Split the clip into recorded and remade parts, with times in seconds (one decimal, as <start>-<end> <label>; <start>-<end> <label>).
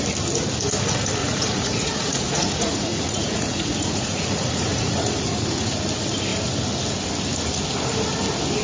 0.0-1.2 recorded; 1.2-5.7 remade; 5.7-8.6 recorded